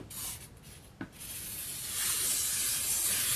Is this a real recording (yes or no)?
yes